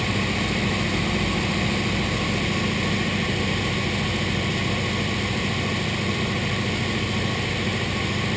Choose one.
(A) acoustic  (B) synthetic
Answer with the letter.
A